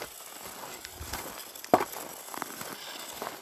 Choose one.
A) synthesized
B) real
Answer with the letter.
B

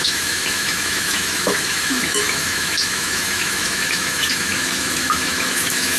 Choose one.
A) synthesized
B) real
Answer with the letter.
A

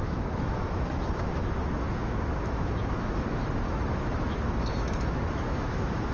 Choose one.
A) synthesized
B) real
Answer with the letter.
A